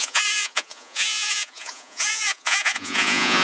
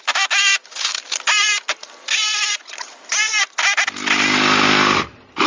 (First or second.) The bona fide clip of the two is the second